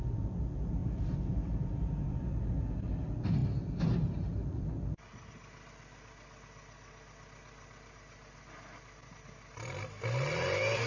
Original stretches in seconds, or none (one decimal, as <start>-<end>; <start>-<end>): 0.0-10.9